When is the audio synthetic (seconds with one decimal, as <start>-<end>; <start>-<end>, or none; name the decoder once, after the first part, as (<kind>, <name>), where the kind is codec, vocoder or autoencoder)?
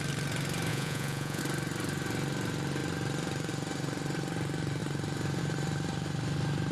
0.7-1.4 (vocoder, Vocos)